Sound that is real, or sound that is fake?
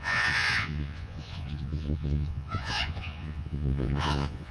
fake